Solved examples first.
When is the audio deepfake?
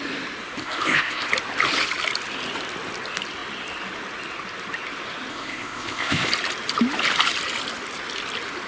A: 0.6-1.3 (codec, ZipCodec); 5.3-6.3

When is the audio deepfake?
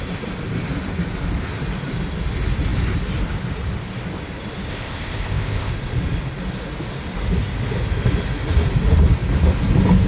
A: 4.7-5.7 (codec, ZipCodec)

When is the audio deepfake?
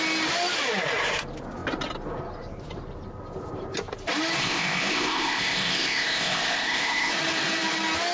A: 4.4-7.1 (codec, ZipCodec)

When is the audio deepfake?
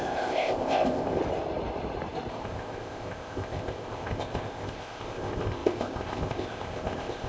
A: 0.0-1.2 (codec, ZipCodec); 2.3-7.3